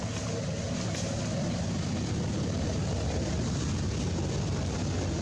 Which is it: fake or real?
real